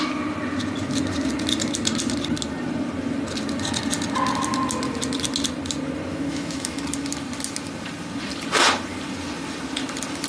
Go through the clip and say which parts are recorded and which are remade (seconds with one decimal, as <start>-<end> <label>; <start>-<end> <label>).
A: 0.0-6.1 recorded; 6.1-6.8 remade; 6.8-10.3 recorded